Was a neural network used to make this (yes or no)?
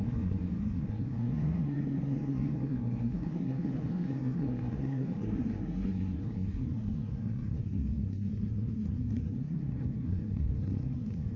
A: yes